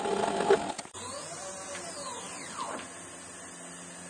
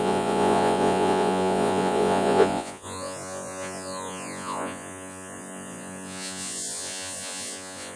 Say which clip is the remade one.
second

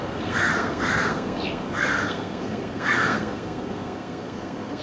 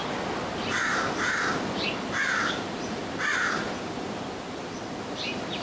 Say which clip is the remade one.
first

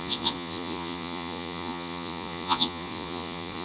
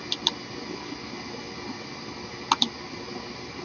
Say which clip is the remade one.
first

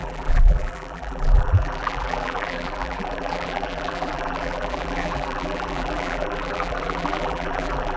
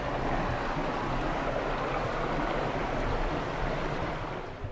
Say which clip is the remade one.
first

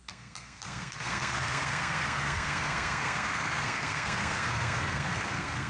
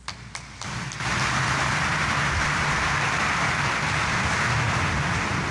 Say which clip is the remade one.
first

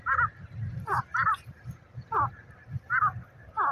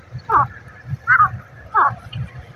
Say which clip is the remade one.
second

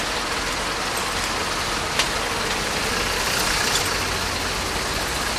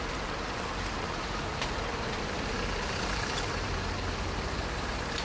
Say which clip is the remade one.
second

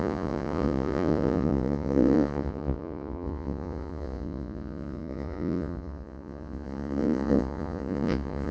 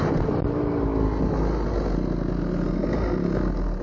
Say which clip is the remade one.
first